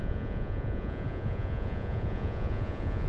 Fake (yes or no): yes